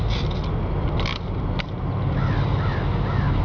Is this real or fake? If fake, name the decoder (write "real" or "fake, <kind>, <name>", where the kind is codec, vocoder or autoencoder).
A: real